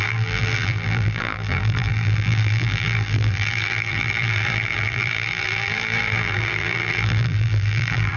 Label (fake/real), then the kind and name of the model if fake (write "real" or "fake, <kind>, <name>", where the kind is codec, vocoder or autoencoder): fake, vocoder, BigVGAN v2